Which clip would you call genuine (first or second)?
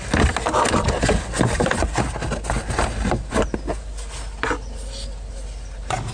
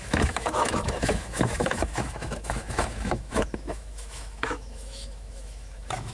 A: first